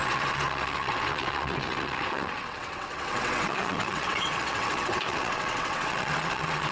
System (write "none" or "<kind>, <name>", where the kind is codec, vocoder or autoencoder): vocoder, WaveNeXt